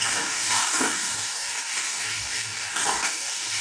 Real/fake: fake